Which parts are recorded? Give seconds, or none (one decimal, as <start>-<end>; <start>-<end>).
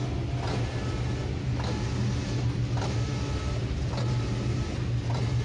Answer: 0.0-5.4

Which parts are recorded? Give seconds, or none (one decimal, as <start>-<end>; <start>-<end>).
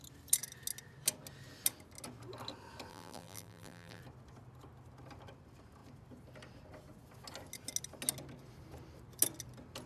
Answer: 0.0-2.9; 4.0-9.9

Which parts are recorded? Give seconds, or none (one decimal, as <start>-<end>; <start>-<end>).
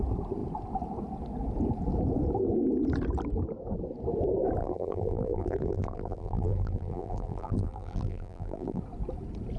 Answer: 0.0-4.6; 8.8-9.6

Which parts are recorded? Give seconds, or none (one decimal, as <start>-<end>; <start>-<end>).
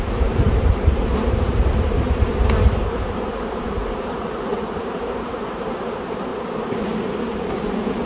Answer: 6.3-7.4